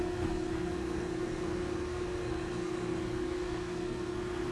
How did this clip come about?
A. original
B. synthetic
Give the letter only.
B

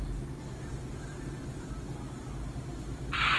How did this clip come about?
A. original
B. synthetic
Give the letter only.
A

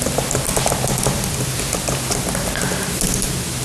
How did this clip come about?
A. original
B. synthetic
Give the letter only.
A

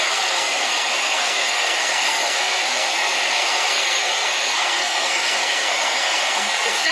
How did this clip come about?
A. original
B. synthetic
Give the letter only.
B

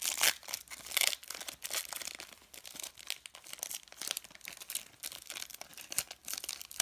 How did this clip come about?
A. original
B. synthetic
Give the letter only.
A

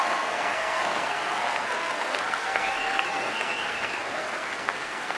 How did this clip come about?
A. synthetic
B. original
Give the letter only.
A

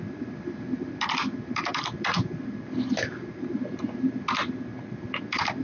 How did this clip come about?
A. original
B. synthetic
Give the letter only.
A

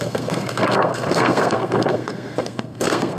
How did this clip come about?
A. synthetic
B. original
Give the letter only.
A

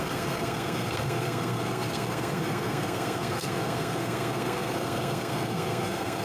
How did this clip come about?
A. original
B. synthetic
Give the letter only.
B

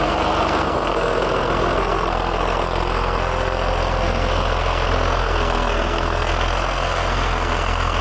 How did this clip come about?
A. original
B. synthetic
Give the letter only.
B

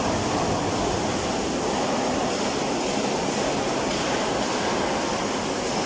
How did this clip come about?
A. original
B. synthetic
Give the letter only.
A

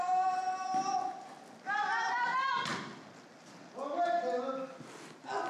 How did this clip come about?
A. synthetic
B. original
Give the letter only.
B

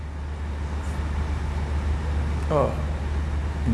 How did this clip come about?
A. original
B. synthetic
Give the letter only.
A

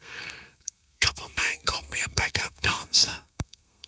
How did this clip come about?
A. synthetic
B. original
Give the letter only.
A